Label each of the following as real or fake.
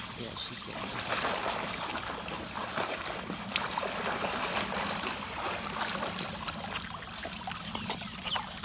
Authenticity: real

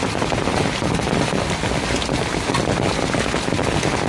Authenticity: real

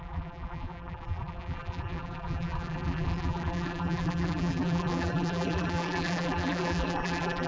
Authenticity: fake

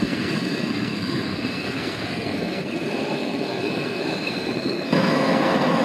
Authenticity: fake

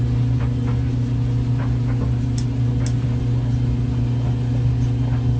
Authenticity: real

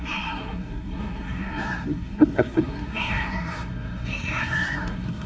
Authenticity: fake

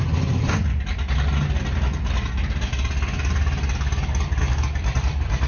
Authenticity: real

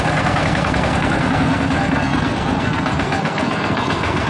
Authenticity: fake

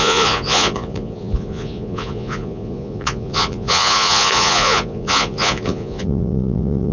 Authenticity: fake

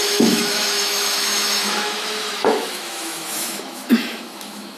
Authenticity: fake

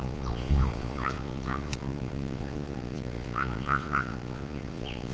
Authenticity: fake